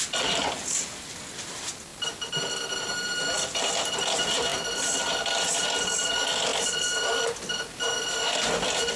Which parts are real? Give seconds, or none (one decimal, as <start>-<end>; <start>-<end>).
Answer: 0.0-9.0